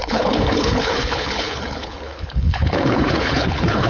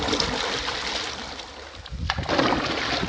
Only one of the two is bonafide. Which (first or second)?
second